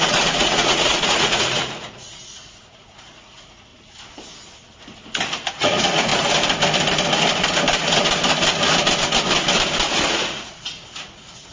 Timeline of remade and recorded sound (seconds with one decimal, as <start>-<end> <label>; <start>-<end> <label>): 0.0-3.7 remade; 3.7-5.5 recorded; 5.5-6.1 remade; 6.1-10.1 recorded; 10.1-11.5 remade

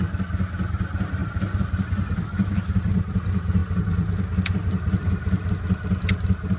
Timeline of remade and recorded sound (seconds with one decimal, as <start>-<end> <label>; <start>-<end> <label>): 0.0-6.6 recorded